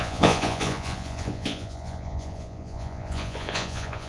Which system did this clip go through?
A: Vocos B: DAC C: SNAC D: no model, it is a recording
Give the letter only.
A